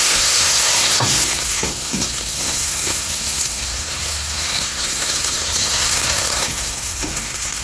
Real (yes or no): no